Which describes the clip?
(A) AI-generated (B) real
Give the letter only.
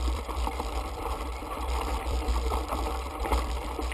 A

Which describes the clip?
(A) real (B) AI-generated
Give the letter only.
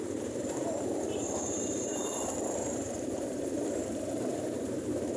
B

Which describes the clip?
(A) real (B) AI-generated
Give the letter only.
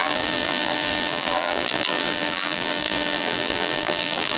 B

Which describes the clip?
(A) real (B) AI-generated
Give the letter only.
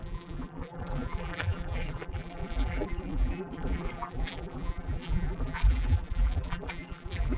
B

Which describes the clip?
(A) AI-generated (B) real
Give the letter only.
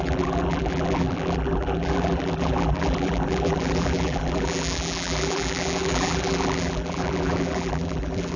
A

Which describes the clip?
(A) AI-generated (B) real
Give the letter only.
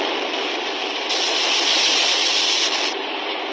B